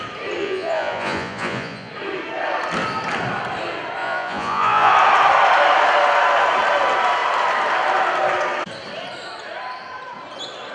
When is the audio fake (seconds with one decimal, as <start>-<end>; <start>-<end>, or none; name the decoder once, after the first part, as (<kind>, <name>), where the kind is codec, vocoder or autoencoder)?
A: 0.4-1.9 (vocoder, Vocos); 4.0-4.9